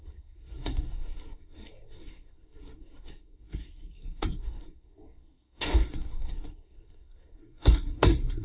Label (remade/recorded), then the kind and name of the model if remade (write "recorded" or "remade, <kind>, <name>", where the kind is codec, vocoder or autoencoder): remade, codec, SNAC